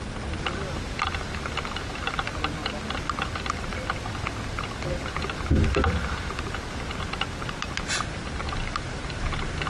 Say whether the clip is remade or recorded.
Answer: recorded